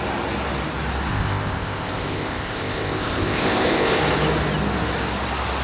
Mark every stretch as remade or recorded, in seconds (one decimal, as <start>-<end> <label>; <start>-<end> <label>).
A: 0.0-1.1 recorded; 1.1-4.0 remade; 4.0-5.6 recorded